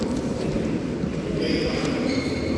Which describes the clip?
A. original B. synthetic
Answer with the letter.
B